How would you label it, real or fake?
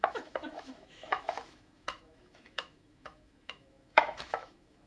fake